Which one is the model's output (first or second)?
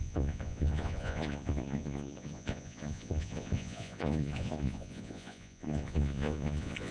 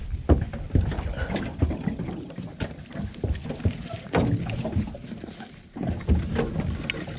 first